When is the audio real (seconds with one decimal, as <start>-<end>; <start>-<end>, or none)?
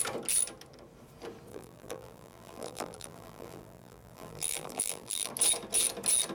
0.0-1.5; 5.3-6.3